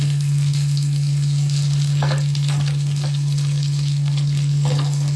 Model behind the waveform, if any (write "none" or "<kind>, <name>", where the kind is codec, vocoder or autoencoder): codec, SNAC